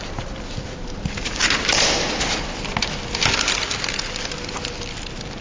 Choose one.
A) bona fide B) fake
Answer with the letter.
A